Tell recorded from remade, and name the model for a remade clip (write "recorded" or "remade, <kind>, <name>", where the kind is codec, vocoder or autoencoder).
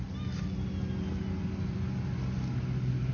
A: recorded